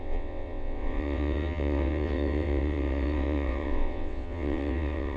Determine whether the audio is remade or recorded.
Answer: remade